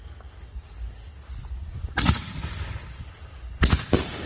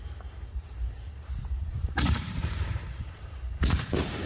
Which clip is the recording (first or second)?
first